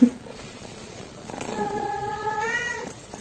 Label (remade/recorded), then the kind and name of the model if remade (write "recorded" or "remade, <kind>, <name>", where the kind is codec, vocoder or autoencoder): remade, vocoder, Vocos